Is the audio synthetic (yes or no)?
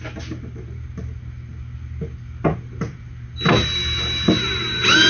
no